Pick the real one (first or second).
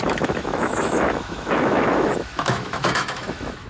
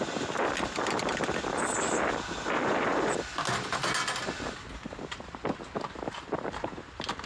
second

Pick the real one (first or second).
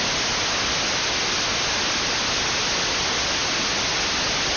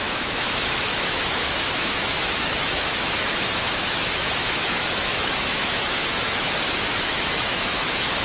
first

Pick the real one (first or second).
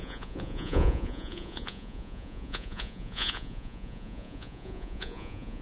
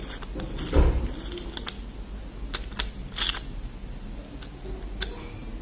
second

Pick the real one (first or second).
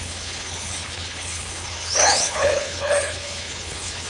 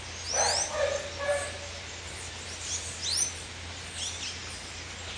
second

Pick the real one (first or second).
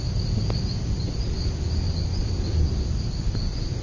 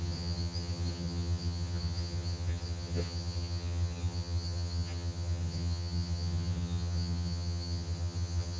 first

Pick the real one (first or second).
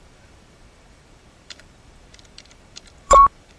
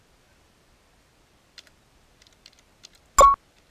second